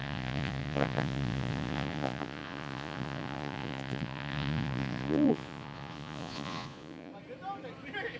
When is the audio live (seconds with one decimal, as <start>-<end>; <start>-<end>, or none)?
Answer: 7.1-8.2